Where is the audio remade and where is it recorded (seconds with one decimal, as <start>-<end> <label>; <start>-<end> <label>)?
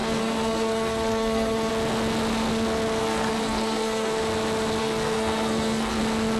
0.0-1.7 remade; 1.7-3.0 recorded; 3.0-4.2 remade; 4.2-4.8 recorded; 4.8-6.0 remade; 6.0-6.4 recorded